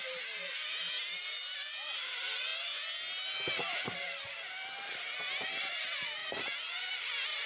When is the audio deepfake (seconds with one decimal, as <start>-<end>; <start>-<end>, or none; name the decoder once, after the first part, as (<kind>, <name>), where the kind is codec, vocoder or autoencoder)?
none